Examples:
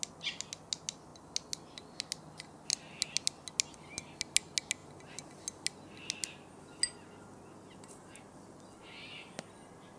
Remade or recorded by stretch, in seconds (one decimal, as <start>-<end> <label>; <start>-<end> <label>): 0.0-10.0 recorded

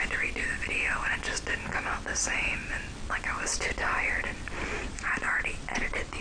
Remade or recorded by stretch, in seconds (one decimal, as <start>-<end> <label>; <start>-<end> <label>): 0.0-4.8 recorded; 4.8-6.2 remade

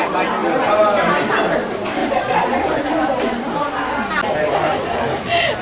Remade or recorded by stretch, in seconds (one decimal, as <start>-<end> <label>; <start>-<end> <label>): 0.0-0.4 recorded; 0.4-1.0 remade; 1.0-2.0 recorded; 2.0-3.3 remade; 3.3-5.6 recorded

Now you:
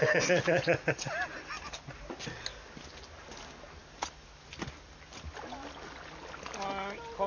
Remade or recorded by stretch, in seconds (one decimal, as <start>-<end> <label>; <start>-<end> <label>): 0.0-7.3 recorded

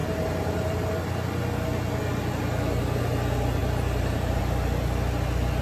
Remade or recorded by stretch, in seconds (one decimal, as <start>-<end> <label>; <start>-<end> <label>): 0.0-0.9 remade; 0.9-3.6 recorded; 3.6-4.4 remade; 4.4-5.6 recorded